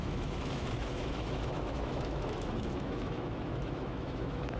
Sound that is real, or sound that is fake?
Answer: fake